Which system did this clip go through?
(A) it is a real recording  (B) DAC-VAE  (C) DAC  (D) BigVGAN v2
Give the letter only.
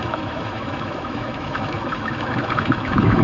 B